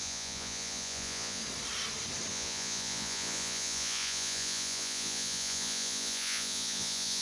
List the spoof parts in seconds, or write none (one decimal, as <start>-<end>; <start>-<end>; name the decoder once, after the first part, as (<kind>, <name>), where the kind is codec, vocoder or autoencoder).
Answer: 0.0-1.4 (vocoder, Vocos); 2.3-7.2